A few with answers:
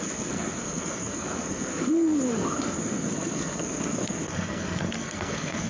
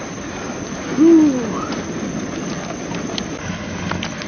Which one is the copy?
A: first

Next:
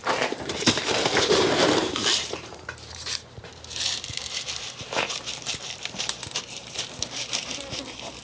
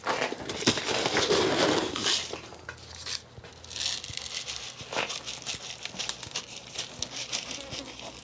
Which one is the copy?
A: first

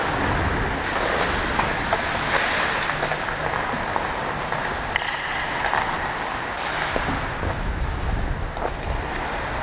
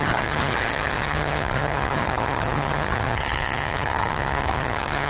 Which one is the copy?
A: second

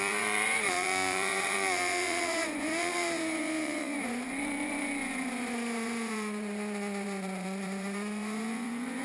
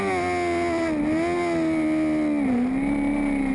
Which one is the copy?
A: first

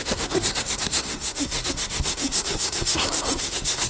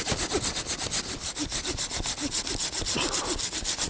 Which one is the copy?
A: first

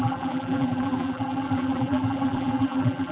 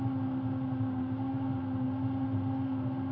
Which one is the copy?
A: first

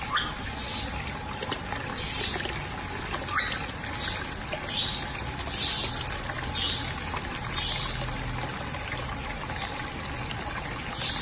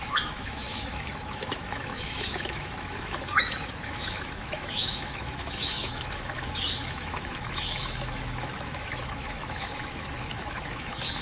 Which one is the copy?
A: second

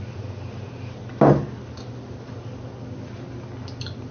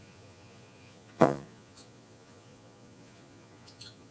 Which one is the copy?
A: second